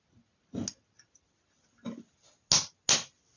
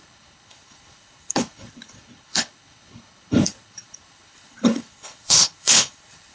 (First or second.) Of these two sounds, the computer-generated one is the second